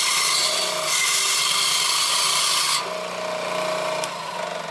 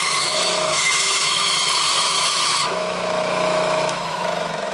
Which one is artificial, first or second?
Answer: second